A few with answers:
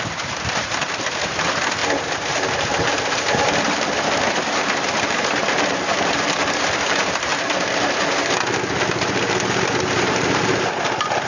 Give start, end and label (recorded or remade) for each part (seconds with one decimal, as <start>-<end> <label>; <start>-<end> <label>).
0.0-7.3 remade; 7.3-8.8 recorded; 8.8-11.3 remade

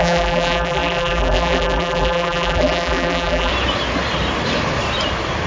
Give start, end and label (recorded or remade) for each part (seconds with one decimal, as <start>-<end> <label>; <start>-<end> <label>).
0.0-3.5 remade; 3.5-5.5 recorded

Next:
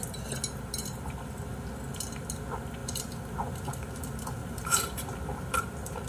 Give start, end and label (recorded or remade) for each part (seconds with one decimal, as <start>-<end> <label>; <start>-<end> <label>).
0.0-2.8 recorded; 2.8-3.9 remade; 3.9-4.4 recorded; 4.4-5.1 remade; 5.1-6.1 recorded

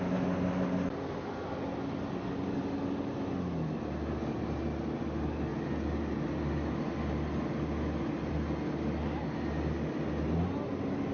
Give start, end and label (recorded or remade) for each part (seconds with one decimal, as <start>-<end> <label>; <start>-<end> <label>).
0.0-11.1 recorded

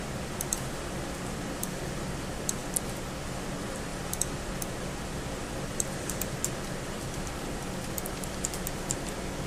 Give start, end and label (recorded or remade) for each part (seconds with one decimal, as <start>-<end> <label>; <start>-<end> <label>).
0.0-2.6 remade; 2.6-3.2 recorded; 3.2-9.5 remade

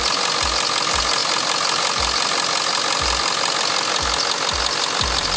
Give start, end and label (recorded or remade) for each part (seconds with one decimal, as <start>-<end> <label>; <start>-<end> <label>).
0.0-5.4 recorded

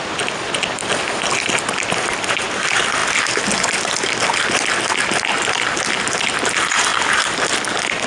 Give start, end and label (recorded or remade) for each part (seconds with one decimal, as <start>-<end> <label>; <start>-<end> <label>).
0.0-0.8 remade; 0.8-1.4 recorded; 1.4-3.0 remade; 3.0-6.5 recorded; 6.5-8.1 remade